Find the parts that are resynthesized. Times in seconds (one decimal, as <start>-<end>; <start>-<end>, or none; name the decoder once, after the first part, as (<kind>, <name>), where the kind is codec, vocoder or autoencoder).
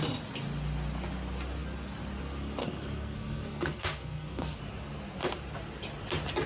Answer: 2.6-4.6 (codec, SNAC)